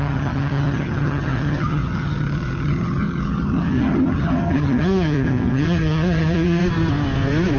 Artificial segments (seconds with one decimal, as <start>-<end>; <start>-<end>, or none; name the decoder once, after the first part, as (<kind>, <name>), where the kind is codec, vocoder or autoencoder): 0.0-6.6 (vocoder, HiFi-GAN)